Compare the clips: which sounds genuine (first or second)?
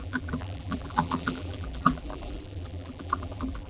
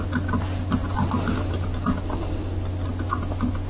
second